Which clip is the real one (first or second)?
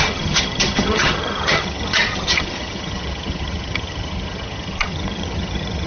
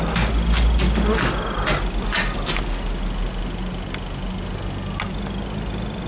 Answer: second